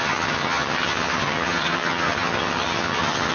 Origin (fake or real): fake